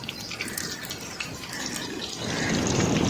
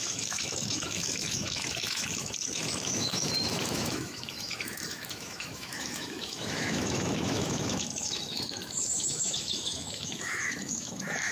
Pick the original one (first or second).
first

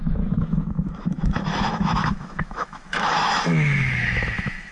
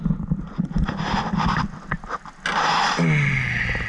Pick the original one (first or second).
second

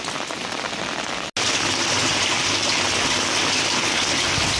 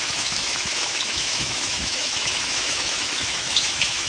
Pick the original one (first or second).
first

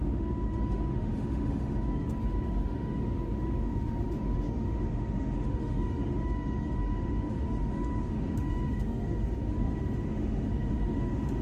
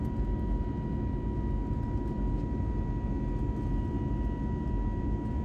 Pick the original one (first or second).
second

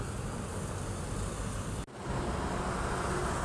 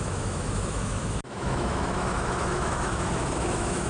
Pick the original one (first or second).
first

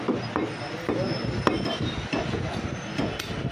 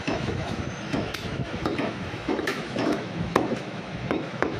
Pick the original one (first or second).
first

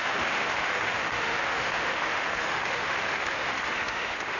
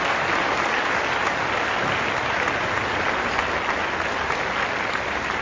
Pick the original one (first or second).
second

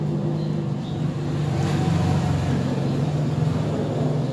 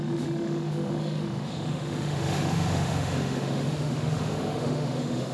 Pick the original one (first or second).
first